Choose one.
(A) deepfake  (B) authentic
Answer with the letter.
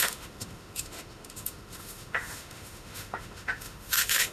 A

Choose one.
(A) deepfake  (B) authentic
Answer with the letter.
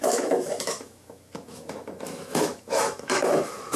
A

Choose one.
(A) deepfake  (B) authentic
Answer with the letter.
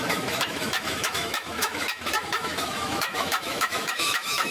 A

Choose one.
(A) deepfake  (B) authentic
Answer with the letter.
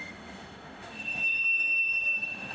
A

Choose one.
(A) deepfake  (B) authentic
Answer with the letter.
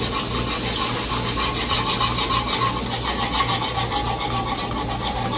B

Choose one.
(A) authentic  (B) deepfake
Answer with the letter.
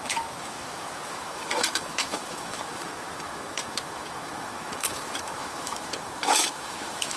B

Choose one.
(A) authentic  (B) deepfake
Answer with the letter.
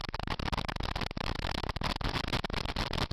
A